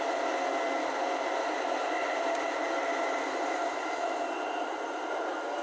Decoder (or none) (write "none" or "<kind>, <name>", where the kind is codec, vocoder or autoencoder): none